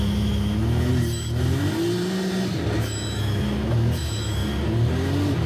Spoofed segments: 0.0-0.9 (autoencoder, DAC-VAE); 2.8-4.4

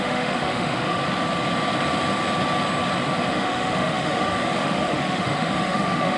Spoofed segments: 0.0-1.0 (autoencoder, DAC-VAE); 3.3-6.2

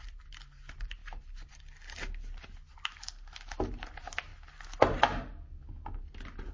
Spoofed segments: none

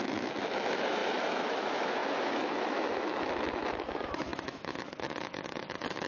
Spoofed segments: 0.0-6.1 (autoencoder, DAC-VAE)

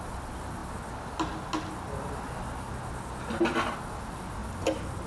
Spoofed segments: none

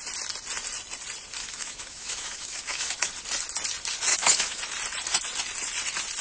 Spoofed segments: 1.4-3.1 (autoencoder, DAC-VAE); 4.1-4.6

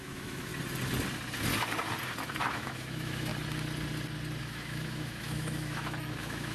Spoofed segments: 0.0-0.5 (autoencoder, DAC-VAE); 2.5-3.3; 4.4-6.5

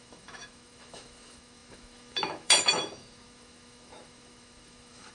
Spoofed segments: 0.0-5.1 (autoencoder, DAC-VAE)